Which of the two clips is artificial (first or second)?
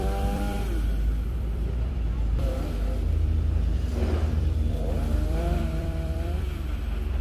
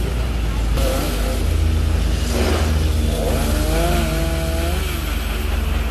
first